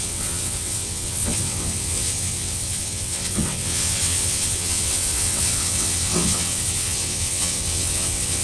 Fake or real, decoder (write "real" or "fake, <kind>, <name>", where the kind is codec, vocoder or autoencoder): fake, vocoder, WaveNeXt